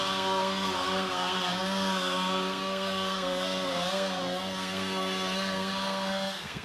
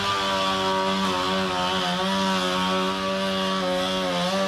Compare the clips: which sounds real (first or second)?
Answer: second